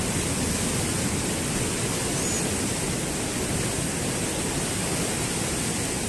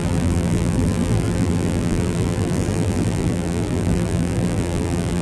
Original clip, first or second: first